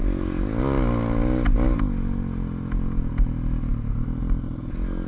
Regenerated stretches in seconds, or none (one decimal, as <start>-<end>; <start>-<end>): none